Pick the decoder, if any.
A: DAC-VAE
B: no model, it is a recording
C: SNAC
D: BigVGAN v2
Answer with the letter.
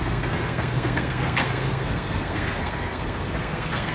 C